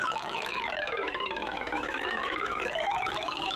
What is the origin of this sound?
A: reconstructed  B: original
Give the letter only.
A